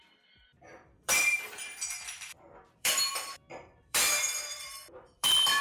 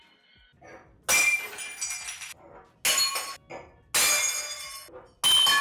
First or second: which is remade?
first